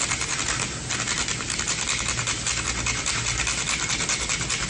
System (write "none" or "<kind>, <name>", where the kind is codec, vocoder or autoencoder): none